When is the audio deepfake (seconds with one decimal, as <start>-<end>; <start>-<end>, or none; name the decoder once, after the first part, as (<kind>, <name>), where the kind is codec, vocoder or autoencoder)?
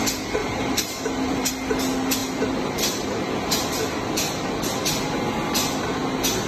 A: 0.4-1.5 (vocoder, BigVGAN v2)